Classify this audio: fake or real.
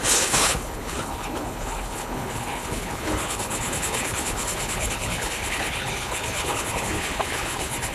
fake